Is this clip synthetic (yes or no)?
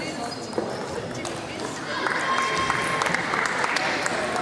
no